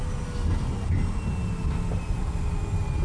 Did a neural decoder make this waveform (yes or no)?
no